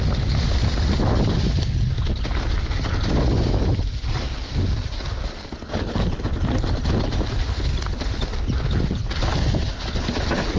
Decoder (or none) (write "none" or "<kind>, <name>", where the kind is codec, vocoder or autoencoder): none